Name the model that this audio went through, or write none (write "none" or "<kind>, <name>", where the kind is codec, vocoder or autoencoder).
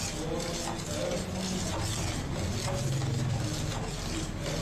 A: none